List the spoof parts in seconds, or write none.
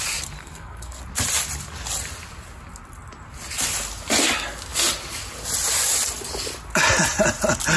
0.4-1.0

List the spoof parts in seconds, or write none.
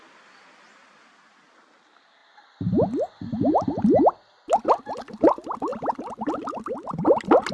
none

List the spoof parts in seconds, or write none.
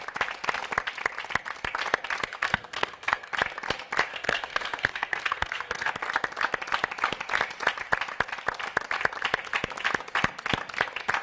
2.3-3.3; 4.1-5.9